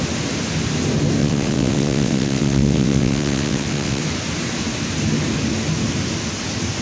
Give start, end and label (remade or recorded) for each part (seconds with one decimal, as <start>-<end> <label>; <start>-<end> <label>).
0.0-1.2 recorded; 1.2-4.0 remade; 4.0-6.8 recorded